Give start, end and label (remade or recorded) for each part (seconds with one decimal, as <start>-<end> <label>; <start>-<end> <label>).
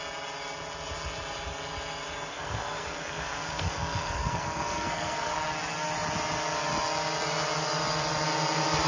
0.0-2.3 recorded; 2.3-5.3 remade; 5.3-8.9 recorded